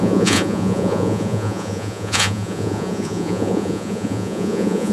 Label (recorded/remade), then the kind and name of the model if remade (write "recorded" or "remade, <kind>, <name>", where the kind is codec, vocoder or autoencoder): remade, vocoder, Vocos